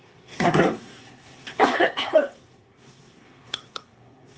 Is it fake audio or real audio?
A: fake